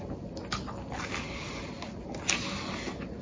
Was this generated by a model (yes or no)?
no